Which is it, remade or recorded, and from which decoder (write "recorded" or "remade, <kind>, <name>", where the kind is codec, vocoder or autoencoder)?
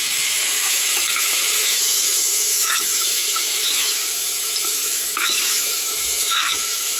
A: remade, autoencoder, DAC-VAE